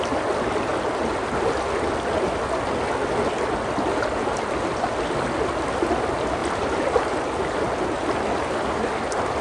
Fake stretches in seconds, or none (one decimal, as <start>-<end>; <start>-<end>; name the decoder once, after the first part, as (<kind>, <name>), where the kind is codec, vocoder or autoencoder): none